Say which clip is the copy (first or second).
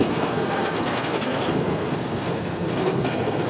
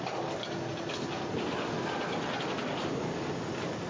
first